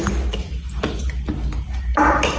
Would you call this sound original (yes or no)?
yes